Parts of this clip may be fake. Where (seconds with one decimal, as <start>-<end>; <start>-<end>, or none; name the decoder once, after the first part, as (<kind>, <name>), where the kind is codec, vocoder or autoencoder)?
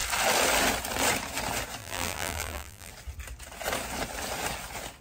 1.8-2.9 (vocoder, BigVGAN v2)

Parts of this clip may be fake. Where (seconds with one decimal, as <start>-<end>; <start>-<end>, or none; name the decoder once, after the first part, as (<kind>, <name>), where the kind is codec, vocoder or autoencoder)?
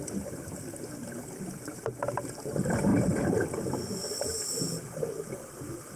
none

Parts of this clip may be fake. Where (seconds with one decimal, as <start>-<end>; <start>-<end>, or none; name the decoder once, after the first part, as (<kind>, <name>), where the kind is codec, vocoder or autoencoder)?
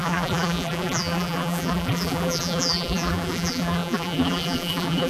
0.0-5.1 (vocoder, BigVGAN v2)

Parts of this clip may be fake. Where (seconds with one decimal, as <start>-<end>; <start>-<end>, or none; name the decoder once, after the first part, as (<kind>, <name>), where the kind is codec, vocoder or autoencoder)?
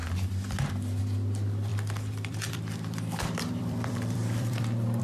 1.7-5.0 (vocoder, BigVGAN v2)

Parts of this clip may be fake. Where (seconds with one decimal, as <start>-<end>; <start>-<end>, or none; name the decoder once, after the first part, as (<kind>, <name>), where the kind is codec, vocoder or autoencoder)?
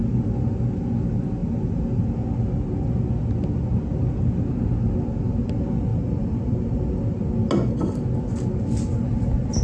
none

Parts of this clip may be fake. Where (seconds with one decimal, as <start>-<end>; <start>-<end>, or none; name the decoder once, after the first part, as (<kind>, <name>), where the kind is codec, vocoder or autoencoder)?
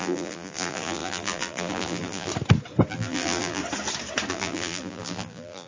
0.0-2.3 (vocoder, BigVGAN v2); 2.9-3.6; 4.3-5.7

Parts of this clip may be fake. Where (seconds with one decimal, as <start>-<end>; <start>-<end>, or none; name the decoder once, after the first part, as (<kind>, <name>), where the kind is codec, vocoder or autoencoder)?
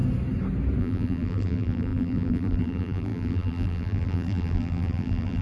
0.8-5.4 (vocoder, BigVGAN v2)